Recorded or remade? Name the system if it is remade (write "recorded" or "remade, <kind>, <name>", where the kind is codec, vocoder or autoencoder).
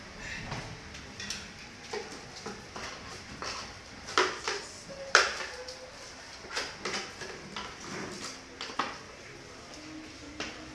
remade, vocoder, BigVGAN v2